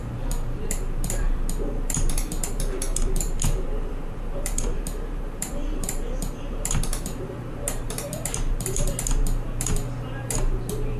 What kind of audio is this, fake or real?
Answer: fake